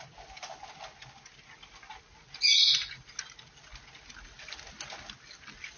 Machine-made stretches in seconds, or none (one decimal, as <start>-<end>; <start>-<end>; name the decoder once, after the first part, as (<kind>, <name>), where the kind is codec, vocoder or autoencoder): none